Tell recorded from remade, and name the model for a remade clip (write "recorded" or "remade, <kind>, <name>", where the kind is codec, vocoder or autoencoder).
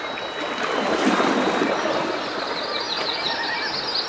recorded